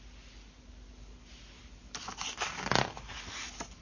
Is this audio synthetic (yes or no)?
no